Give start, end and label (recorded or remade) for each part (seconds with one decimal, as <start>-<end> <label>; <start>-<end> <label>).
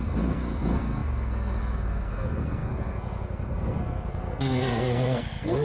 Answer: 0.0-5.6 remade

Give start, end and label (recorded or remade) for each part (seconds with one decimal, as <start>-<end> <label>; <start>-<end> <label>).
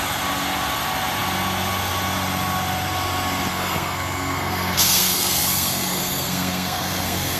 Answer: 0.0-3.5 recorded; 3.5-7.4 remade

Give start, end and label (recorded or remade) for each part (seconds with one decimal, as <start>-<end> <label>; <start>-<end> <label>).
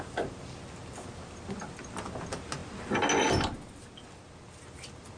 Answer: 0.0-5.2 recorded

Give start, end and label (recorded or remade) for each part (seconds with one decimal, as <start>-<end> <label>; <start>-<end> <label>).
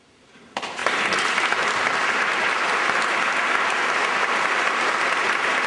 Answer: 0.0-0.8 remade; 0.8-4.2 recorded; 4.2-5.7 remade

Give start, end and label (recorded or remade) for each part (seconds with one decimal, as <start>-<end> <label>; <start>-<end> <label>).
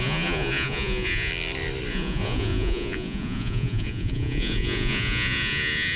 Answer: 0.0-1.3 remade; 1.3-1.9 recorded; 1.9-6.0 remade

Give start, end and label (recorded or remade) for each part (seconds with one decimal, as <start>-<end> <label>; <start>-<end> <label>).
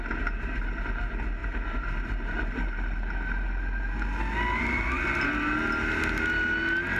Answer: 0.0-7.0 recorded